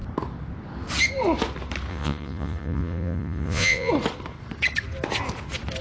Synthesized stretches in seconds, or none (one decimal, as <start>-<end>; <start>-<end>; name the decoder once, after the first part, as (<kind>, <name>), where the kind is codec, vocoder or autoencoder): 1.9-3.9 (vocoder, Vocos)